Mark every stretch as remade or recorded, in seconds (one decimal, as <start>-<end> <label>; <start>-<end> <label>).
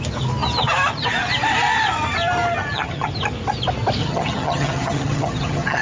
0.0-2.6 recorded; 2.6-3.1 remade; 3.1-4.0 recorded; 4.0-5.8 remade